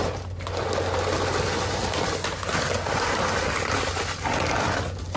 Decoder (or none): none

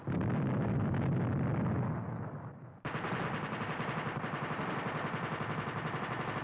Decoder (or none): none